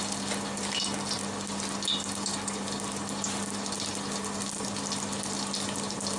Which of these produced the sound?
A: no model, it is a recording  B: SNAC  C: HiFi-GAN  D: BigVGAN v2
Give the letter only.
A